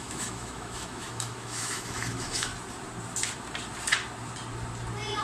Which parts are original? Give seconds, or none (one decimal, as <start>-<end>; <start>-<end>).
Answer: 2.5-5.2